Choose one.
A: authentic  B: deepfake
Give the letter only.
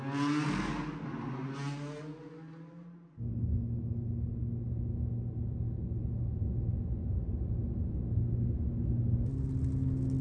A